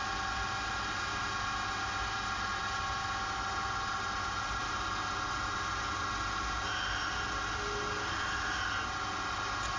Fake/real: real